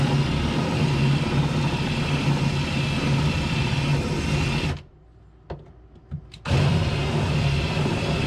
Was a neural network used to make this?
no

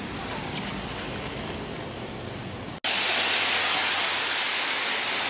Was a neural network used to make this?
no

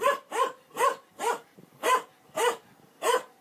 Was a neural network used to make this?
yes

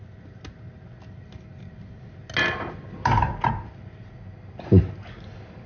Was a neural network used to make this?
no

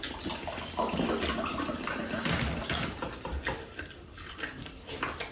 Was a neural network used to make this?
no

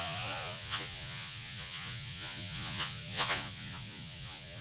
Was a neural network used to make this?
yes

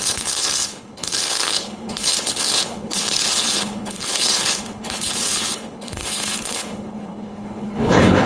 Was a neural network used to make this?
yes